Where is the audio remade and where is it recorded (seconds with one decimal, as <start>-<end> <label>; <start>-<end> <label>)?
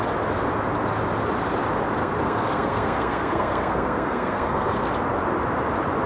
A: 0.0-2.0 recorded; 2.0-4.9 remade; 4.9-6.1 recorded